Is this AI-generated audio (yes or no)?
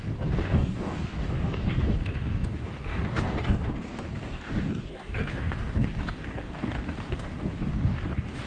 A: yes